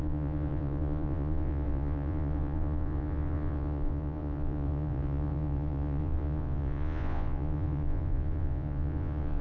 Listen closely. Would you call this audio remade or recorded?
remade